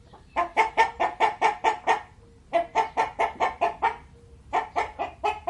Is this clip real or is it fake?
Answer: real